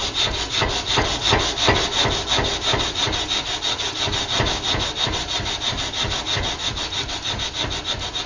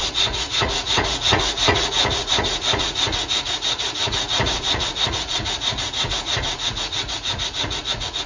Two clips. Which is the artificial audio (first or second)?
second